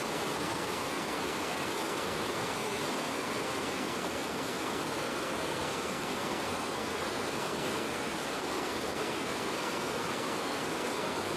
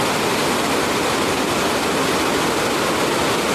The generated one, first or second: first